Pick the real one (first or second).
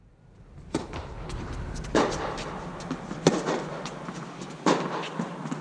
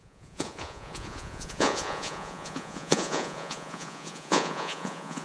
first